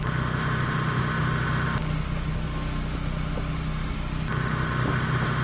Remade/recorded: recorded